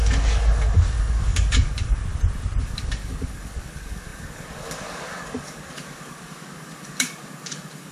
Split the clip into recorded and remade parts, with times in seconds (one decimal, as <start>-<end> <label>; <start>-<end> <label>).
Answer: 0.0-2.0 remade; 2.0-2.6 recorded; 2.6-7.9 remade